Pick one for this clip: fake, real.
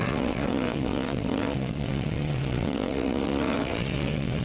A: fake